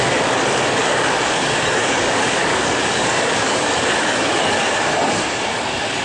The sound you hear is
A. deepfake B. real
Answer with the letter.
A